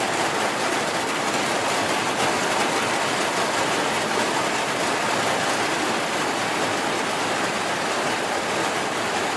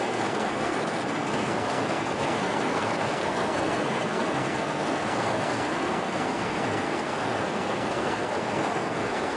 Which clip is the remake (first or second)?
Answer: second